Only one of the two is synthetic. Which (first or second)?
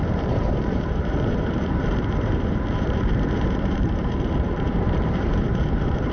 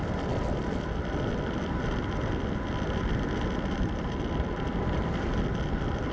first